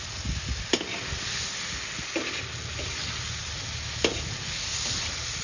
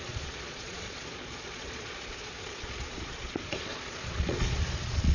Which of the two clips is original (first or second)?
first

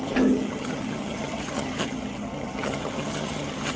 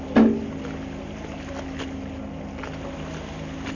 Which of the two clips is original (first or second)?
second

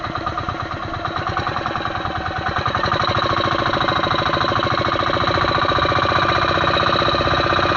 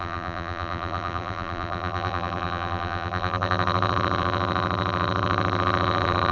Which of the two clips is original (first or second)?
first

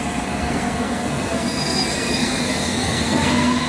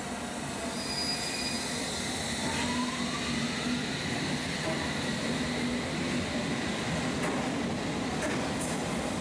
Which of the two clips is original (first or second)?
second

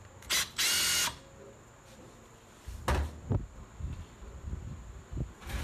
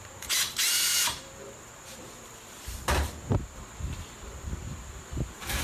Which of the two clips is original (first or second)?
first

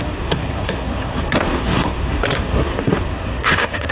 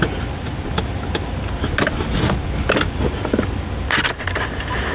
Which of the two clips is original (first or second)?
second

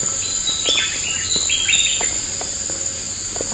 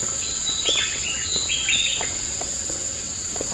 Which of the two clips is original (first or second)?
first